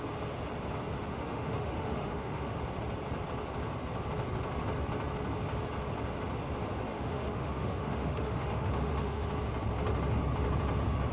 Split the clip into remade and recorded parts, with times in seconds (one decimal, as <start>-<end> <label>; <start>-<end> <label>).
0.0-1.1 recorded; 1.1-2.6 remade; 2.6-6.9 recorded; 6.9-9.3 remade; 9.3-11.1 recorded